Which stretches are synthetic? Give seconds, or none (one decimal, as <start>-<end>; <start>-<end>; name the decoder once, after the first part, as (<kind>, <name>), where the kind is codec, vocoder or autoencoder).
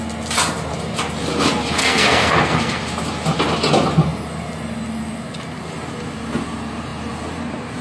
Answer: 1.8-2.8 (codec, SNAC)